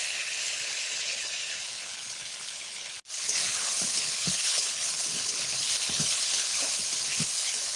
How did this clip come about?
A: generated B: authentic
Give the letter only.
A